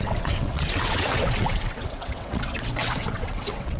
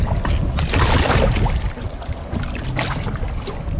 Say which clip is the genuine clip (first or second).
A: second